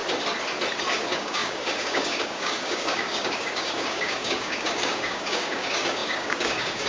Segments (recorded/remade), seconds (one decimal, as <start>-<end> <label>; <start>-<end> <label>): 0.0-0.9 recorded; 0.9-6.9 remade